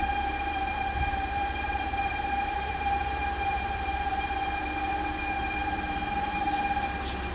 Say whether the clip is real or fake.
fake